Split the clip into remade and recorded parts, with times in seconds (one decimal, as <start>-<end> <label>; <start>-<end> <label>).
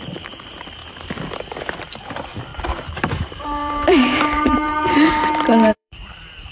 0.0-0.8 remade; 0.8-1.7 recorded; 1.7-6.5 remade